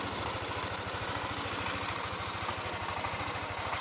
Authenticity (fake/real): real